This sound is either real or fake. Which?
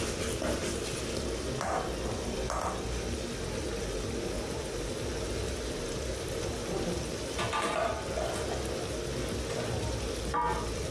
real